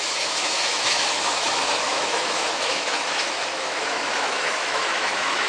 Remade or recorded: remade